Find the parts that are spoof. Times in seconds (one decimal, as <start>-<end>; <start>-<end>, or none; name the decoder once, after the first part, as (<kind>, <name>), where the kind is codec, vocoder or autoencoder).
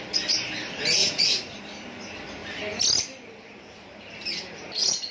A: 1.0-1.6 (vocoder, Vocos)